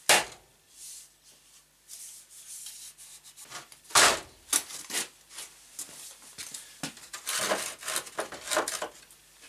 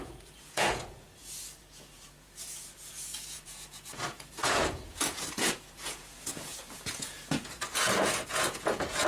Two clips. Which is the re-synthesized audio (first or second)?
second